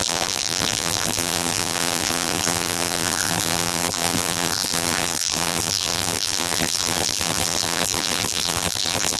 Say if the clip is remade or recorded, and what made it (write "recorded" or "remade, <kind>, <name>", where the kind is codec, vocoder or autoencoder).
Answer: remade, vocoder, BigVGAN v2